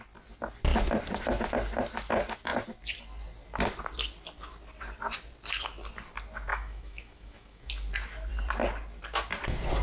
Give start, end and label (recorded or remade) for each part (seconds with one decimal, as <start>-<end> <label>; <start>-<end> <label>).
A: 0.0-6.5 recorded; 6.5-7.7 remade; 7.7-9.8 recorded